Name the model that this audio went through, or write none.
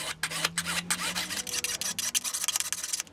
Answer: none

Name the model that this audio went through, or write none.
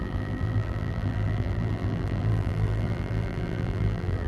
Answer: vocoder, BigVGAN v2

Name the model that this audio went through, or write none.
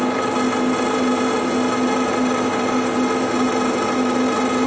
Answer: none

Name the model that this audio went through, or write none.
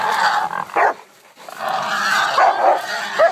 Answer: none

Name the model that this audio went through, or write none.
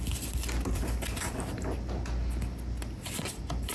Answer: none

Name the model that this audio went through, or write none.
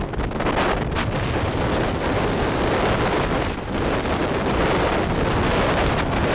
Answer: none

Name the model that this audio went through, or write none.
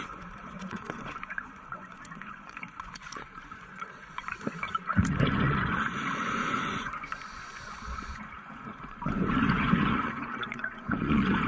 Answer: vocoder, Vocos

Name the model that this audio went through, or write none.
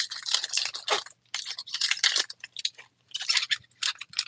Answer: none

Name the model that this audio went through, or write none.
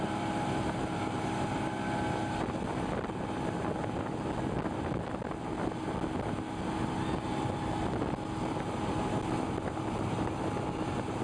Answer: none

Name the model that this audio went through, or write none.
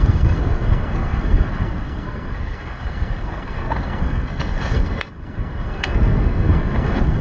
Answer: codec, SNAC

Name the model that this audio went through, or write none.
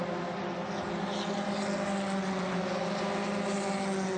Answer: none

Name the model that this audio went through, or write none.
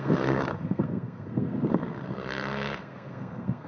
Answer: codec, SNAC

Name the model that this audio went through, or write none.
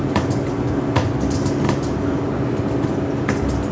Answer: none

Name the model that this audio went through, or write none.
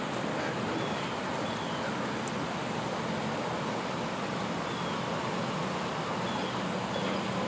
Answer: none